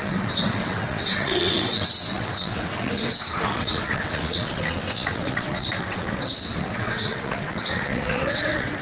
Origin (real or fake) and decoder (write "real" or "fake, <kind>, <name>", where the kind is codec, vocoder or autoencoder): fake, vocoder, WaveNeXt